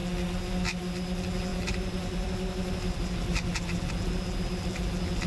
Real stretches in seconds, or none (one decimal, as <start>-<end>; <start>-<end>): 0.0-1.5; 3.9-5.3